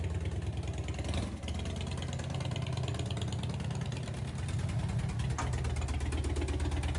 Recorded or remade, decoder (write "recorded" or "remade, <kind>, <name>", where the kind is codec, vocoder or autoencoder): recorded